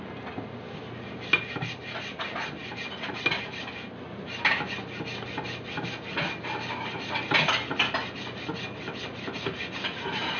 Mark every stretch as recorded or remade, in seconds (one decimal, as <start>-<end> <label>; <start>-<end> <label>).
0.0-10.4 recorded